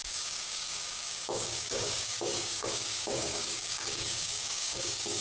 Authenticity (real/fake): fake